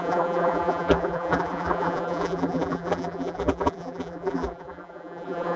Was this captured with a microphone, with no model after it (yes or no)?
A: no